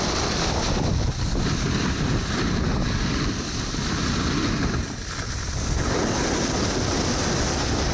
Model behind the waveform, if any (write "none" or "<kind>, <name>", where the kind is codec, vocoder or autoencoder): none